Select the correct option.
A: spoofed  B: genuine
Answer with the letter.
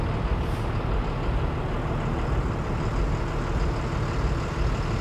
B